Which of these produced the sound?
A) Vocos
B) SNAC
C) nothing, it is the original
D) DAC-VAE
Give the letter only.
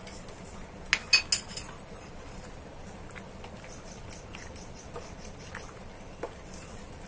C